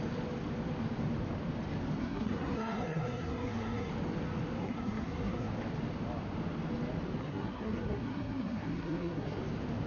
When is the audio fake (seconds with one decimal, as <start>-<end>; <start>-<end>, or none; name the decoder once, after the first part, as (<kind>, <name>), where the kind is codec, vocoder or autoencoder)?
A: 2.0-3.9 (codec, SNAC); 4.6-5.5; 7.2-9.4